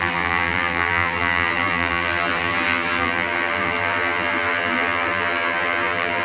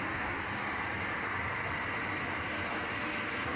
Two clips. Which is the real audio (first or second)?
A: second